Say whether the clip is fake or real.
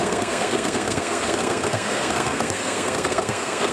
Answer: fake